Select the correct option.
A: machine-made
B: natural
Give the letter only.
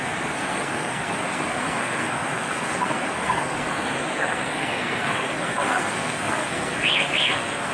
A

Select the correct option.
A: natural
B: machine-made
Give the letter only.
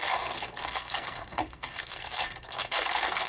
B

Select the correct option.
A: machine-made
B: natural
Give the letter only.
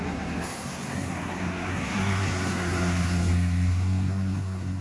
A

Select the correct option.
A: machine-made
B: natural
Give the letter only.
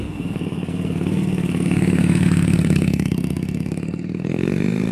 A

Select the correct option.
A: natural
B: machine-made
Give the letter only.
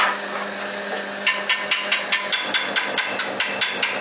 A